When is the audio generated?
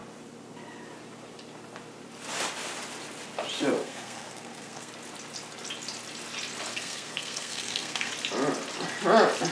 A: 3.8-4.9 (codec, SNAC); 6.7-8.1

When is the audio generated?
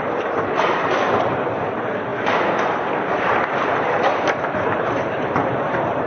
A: 0.0-2.1 (vocoder, BigVGAN v2); 3.3-6.1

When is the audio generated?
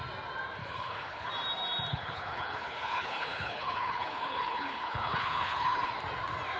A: 0.6-1.3 (codec, HILCodec); 1.9-5.9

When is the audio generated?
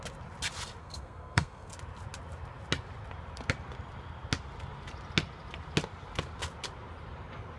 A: 0.8-1.7 (codec, SNAC)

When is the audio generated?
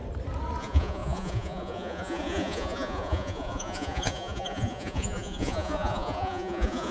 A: 0.6-6.9 (vocoder, Vocos)